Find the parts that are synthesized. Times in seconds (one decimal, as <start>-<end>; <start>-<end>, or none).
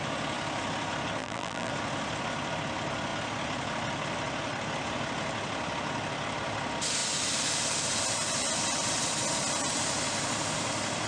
1.2-1.7